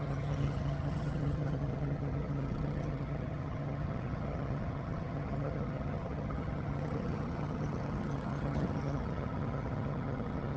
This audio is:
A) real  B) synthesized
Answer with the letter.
B